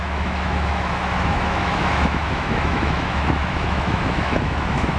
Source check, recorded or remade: remade